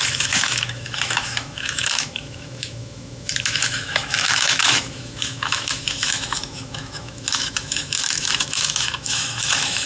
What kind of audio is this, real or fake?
fake